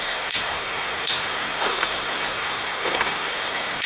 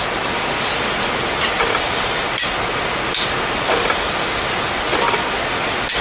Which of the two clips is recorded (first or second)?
second